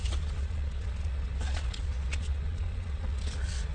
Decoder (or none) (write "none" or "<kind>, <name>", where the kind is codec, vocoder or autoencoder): vocoder, Vocos